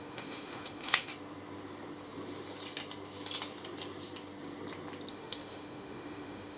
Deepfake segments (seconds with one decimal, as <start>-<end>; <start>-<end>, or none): 0.0-1.1; 5.1-6.6